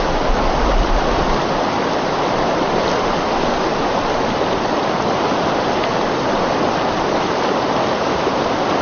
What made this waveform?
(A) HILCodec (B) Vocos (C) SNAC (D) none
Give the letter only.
D